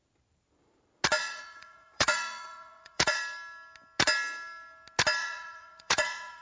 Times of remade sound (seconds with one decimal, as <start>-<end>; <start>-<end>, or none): 1.2-3.2; 5.2-6.4